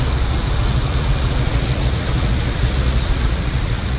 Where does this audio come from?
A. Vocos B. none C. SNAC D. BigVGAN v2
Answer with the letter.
A